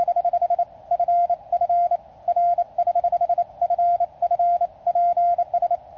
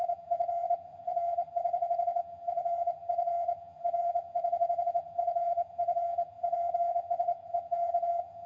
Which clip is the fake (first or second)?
second